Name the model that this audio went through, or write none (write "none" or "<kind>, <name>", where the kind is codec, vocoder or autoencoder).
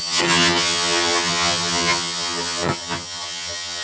vocoder, HiFi-GAN